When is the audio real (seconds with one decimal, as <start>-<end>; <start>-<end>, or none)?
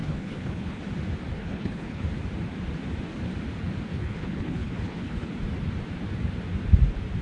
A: 0.8-1.4; 2.0-3.9; 5.3-7.2